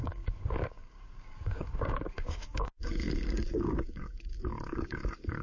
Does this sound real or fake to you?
fake